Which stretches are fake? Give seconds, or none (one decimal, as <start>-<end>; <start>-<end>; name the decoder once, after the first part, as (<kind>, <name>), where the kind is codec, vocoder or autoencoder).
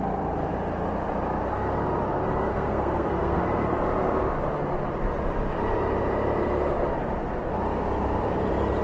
2.5-3.4 (codec, SNAC)